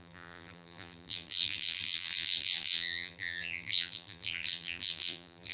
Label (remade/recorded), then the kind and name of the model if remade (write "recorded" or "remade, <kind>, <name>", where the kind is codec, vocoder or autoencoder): remade, vocoder, BigVGAN v2